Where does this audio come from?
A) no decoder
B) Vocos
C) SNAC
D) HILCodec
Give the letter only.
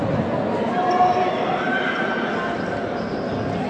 A